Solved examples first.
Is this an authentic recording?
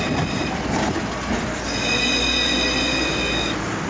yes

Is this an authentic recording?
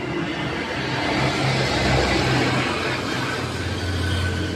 yes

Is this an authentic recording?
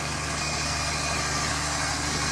no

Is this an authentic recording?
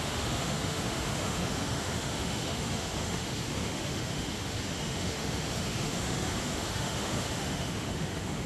no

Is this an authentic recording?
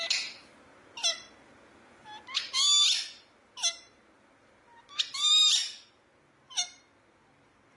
yes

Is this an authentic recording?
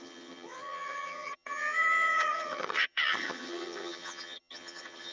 no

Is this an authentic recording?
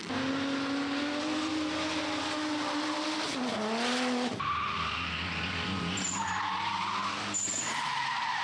yes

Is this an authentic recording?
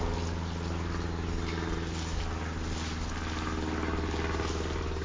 yes